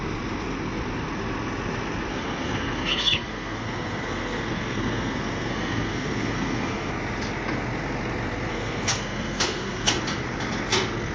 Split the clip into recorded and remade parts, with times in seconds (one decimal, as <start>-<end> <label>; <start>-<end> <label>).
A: 0.0-2.1 recorded; 2.1-6.9 remade; 6.9-8.5 recorded; 8.5-9.9 remade; 9.9-11.1 recorded